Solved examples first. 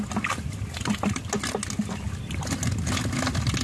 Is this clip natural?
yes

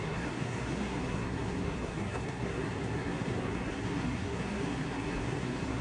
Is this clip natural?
no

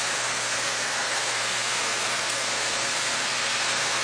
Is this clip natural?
no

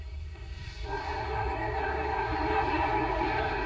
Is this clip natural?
no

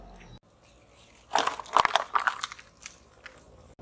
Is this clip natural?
yes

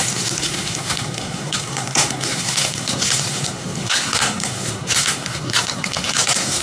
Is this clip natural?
no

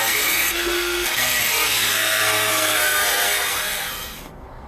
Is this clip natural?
no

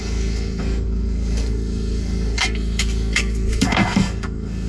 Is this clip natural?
no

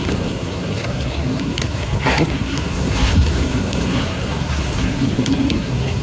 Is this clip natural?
no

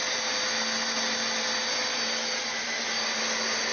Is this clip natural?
yes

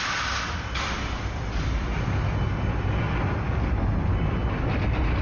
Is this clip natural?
yes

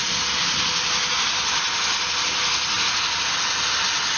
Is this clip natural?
yes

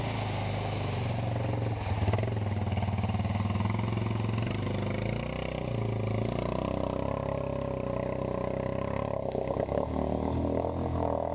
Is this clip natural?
yes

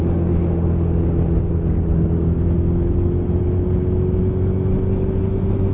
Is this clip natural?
yes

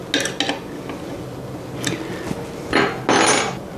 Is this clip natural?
yes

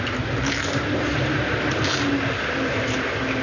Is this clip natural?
yes